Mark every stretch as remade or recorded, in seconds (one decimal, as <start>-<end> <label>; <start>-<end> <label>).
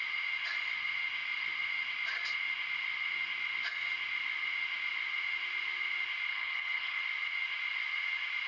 0.0-6.3 recorded; 6.3-7.0 remade; 7.0-8.5 recorded